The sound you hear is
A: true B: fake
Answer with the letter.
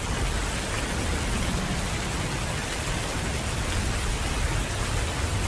A